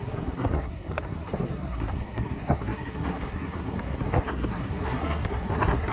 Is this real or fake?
fake